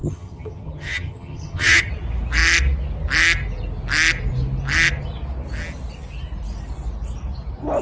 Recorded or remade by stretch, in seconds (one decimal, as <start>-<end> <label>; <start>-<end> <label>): 0.0-1.9 remade; 1.9-7.8 recorded